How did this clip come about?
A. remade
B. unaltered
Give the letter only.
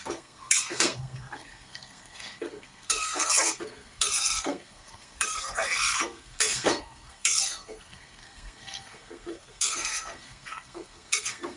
A